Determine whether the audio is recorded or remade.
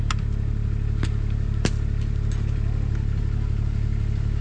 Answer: recorded